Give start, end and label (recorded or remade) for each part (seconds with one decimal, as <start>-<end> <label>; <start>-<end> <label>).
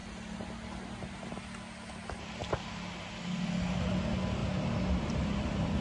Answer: 0.0-5.8 recorded